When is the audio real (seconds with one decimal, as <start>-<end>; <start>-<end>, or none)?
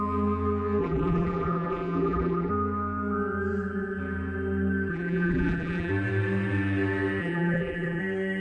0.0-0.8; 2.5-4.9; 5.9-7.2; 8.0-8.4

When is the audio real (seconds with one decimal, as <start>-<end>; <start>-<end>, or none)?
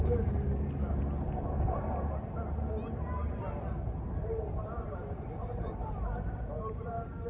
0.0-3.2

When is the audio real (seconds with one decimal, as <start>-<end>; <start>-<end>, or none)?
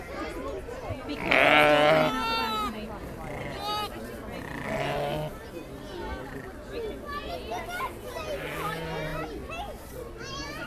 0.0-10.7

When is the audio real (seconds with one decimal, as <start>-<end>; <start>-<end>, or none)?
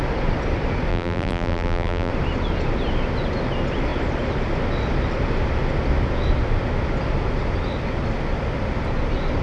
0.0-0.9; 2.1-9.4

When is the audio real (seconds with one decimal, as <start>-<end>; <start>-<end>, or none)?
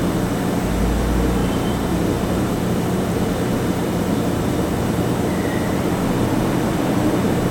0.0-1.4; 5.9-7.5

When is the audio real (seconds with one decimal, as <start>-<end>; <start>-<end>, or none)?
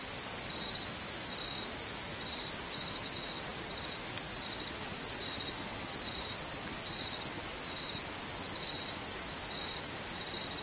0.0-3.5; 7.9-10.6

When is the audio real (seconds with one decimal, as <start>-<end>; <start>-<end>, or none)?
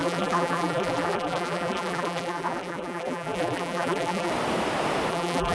4.3-5.1